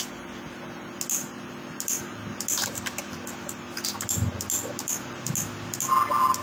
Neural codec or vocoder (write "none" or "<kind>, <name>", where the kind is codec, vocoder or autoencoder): none